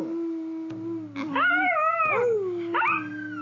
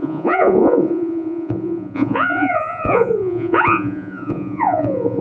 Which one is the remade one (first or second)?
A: second